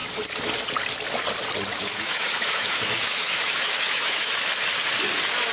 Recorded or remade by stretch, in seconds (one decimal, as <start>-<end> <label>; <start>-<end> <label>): 0.0-1.7 recorded; 1.7-4.3 remade; 4.3-5.5 recorded